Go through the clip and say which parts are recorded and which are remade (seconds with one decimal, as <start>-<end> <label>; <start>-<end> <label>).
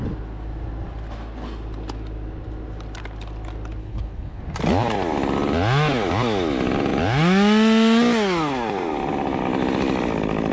0.0-3.8 recorded; 3.8-4.4 remade; 4.4-10.5 recorded